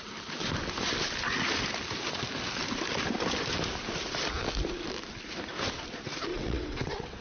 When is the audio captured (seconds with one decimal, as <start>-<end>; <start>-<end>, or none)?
0.0-6.3